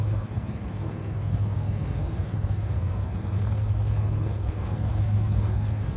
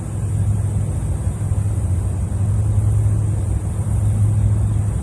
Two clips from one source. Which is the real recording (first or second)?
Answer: second